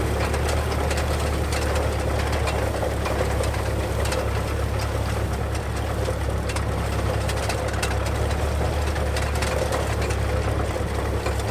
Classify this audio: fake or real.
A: real